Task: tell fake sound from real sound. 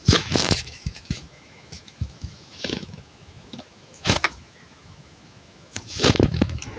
fake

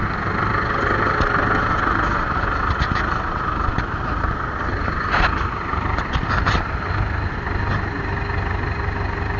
real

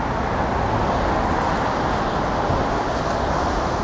real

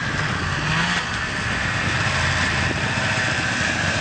real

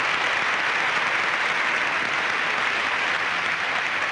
real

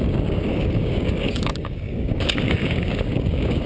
fake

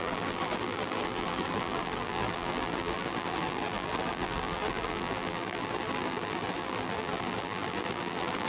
fake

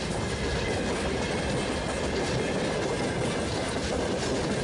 real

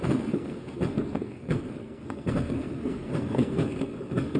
fake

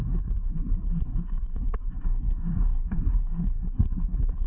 fake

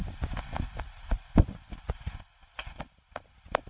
fake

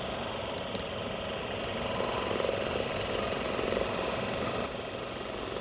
real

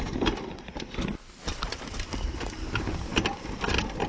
real